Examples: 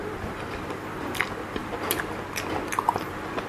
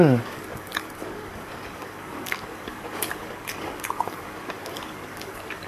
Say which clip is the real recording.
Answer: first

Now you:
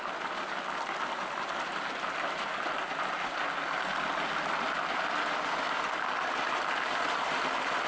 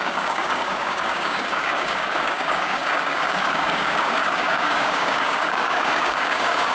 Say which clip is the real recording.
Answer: first